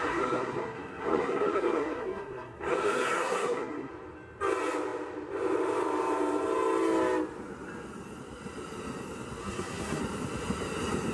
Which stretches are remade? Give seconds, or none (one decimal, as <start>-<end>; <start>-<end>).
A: 0.0-3.9; 9.4-10.0